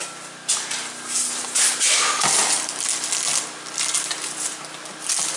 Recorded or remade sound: recorded